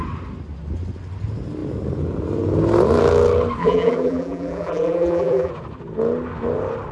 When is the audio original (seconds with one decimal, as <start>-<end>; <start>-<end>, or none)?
0.0-3.6; 5.5-6.9